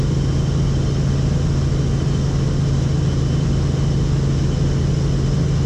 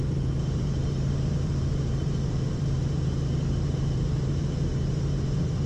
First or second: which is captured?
first